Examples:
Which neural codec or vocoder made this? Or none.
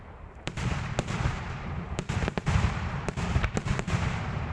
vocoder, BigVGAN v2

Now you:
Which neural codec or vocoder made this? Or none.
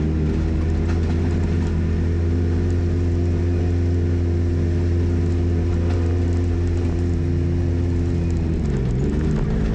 none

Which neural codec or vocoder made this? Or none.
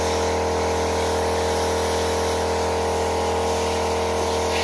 none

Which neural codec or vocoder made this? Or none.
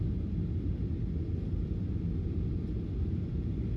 none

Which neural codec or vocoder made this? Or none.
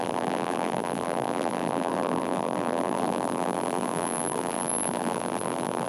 vocoder, BigVGAN v2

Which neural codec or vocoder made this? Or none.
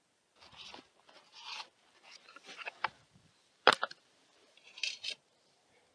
vocoder, BigVGAN v2